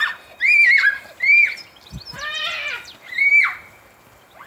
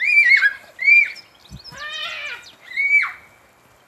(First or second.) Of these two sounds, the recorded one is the second